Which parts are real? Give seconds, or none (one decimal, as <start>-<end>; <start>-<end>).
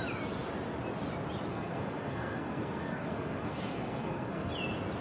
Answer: 0.0-1.5; 4.5-5.0